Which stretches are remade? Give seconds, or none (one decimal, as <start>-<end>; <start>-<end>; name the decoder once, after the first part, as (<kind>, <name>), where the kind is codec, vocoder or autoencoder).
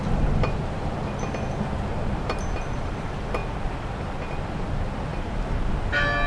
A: none